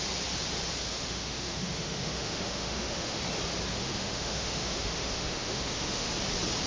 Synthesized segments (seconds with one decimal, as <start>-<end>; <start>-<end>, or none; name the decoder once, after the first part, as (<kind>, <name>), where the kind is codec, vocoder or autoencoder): 0.9-3.2 (autoencoder, DAC-VAE); 3.7-6.1